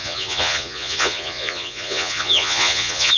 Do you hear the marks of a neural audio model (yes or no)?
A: yes